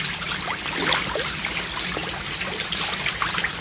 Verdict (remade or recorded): remade